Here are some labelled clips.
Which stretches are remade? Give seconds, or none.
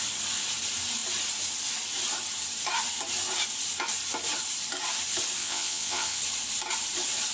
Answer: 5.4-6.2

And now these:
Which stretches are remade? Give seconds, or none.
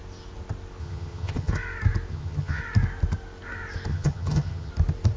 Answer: 0.8-1.5; 2.1-2.6; 3.9-4.7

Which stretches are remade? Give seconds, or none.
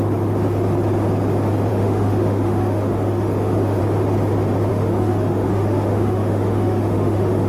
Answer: 1.7-3.8; 4.7-7.5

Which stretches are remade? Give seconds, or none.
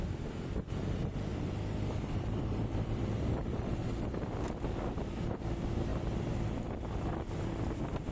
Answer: 1.3-4.1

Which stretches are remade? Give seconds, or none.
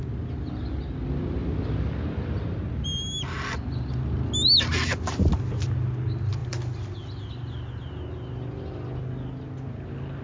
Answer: none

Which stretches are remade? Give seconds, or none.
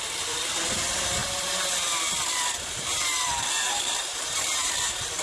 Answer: 0.0-5.2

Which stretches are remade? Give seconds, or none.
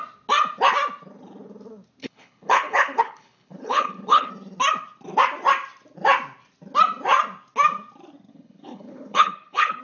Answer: 2.0-4.3; 8.3-9.8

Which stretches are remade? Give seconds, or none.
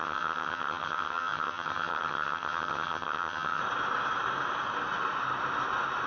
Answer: 0.0-3.6